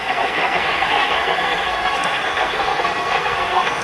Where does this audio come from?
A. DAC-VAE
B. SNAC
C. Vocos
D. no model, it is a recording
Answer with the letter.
B